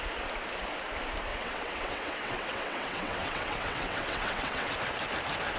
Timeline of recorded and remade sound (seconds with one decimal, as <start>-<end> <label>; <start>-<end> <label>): 0.0-1.3 recorded; 1.3-4.7 remade; 4.7-5.6 recorded